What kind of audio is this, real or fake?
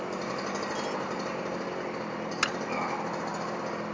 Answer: real